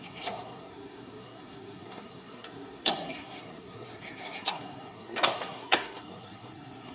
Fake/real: fake